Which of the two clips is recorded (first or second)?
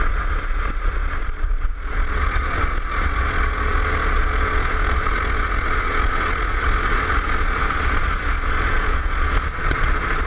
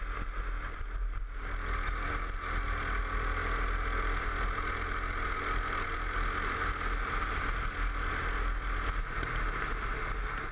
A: second